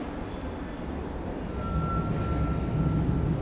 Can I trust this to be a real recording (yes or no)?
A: yes